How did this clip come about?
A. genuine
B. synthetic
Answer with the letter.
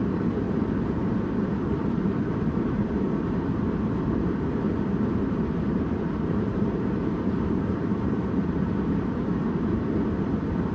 B